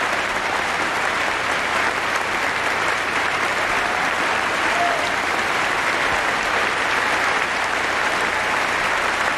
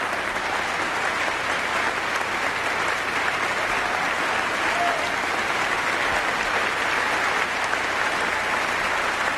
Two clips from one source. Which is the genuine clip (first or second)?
second